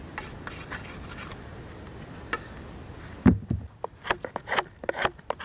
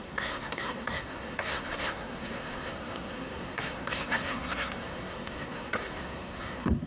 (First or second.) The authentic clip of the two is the first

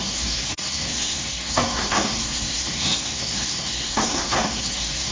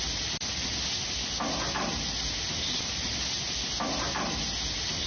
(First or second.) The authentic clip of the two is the second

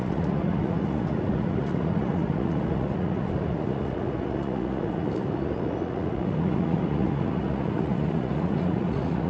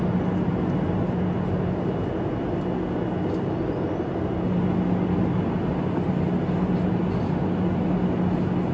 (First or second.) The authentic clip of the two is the second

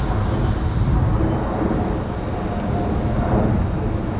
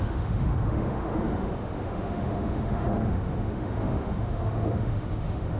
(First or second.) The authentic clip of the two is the first